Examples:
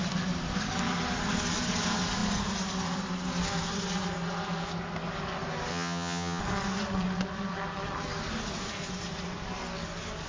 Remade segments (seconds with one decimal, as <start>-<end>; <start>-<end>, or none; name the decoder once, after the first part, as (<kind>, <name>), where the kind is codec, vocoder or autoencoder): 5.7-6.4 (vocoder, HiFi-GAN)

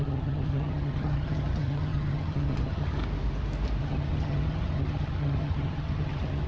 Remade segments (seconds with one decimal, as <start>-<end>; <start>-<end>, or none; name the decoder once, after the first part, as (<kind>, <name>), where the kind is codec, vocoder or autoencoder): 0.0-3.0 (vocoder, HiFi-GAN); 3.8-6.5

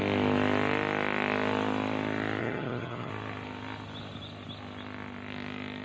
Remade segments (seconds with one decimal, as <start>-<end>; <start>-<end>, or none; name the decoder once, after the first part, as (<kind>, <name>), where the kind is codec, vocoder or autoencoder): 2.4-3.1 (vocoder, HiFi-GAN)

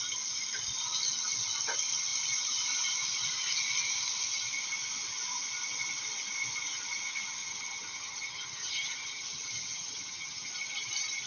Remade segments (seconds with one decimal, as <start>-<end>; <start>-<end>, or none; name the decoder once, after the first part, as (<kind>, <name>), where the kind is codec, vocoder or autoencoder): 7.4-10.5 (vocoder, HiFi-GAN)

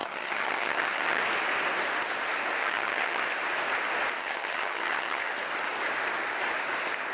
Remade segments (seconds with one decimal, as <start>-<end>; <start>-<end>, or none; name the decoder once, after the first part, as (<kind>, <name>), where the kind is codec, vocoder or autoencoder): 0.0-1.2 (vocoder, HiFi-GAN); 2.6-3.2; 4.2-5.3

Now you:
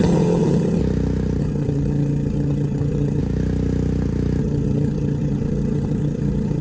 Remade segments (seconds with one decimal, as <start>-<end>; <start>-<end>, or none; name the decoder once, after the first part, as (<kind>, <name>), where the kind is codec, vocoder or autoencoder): 0.0-0.8 (vocoder, HiFi-GAN); 1.4-3.2; 4.4-6.6

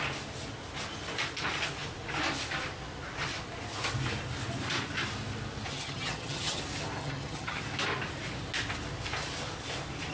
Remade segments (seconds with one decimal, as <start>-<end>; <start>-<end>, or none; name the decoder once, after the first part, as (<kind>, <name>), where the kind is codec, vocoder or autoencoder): 5.7-6.6 (vocoder, HiFi-GAN); 7.0-7.6

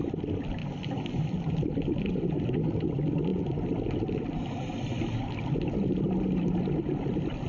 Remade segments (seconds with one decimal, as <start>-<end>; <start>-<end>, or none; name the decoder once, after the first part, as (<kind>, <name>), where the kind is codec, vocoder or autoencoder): none